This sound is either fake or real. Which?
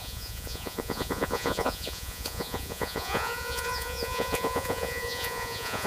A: fake